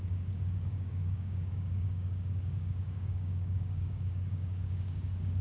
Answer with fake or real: fake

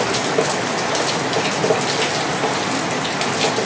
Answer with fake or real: real